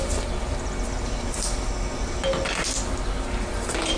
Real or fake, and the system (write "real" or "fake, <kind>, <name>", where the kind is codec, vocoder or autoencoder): real